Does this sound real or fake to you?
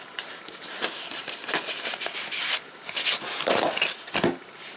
real